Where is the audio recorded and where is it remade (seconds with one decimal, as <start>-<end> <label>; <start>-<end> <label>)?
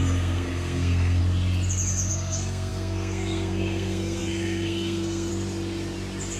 0.0-1.2 remade; 1.2-2.1 recorded; 2.1-5.3 remade; 5.3-6.4 recorded